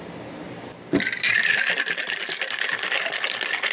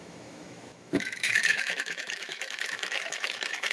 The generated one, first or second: second